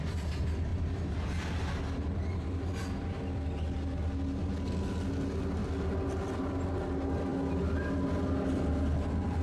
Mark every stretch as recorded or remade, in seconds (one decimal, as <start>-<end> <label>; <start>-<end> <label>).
0.0-9.4 recorded